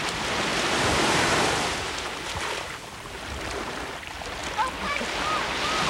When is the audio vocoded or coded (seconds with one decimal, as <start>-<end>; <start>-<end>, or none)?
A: none